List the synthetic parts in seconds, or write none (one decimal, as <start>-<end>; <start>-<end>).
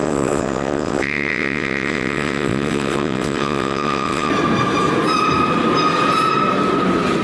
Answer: 0.0-4.3